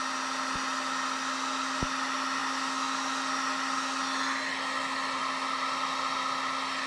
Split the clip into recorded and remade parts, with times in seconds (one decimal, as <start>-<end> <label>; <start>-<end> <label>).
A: 0.0-6.9 recorded